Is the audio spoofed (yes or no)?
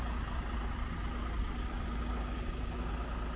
no